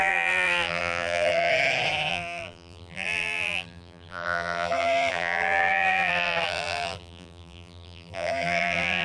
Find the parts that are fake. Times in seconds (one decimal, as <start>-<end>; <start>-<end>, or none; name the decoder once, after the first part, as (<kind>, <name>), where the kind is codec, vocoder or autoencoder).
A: 0.0-1.5 (vocoder, BigVGAN v2); 2.1-9.0